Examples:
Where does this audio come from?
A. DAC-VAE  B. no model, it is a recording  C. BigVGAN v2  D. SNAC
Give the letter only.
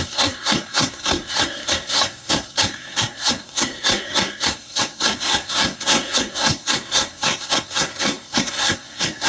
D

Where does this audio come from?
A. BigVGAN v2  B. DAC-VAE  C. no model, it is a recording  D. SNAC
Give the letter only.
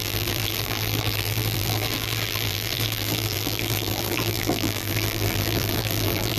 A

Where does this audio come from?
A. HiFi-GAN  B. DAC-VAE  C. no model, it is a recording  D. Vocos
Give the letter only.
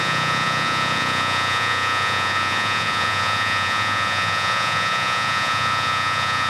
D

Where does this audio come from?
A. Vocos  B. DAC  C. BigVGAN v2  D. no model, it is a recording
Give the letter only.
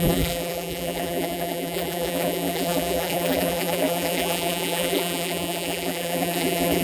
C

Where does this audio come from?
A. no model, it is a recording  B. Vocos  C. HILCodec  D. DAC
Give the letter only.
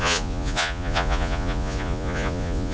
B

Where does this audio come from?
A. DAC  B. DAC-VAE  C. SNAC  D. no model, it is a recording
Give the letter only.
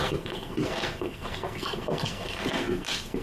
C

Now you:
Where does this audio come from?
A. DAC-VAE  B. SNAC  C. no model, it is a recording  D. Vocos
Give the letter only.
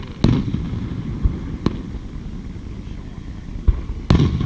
C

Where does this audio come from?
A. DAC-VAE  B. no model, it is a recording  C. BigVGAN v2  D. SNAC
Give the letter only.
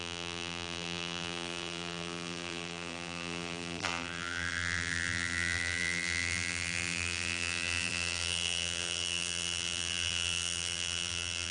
C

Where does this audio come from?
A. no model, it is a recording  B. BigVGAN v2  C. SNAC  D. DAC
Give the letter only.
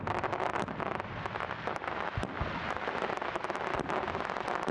A